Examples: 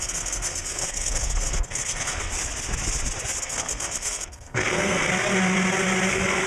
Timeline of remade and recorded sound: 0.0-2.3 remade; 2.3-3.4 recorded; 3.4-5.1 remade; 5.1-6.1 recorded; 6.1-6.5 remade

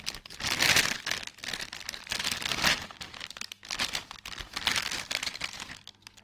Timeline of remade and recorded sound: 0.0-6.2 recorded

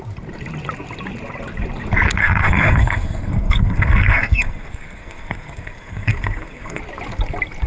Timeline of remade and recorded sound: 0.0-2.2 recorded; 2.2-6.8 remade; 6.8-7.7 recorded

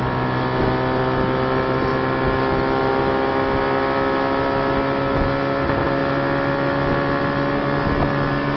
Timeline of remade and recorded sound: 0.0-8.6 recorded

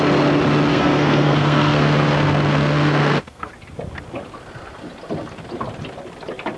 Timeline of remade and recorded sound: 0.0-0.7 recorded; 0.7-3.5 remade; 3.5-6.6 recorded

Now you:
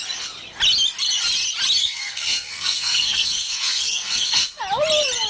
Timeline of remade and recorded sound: 0.0-1.8 recorded; 1.8-4.6 remade; 4.6-5.3 recorded

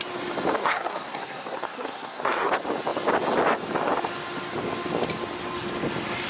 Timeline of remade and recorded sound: 0.0-0.6 recorded; 0.6-2.5 remade; 2.5-6.3 recorded